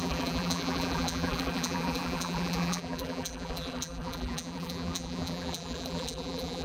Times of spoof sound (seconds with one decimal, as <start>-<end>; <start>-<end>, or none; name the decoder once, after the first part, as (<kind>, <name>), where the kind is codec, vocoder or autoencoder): 0.0-6.6 (vocoder, BigVGAN v2)